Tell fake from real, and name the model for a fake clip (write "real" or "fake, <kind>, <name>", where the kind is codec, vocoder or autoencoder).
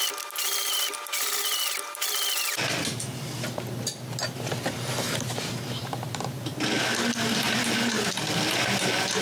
fake, vocoder, BigVGAN v2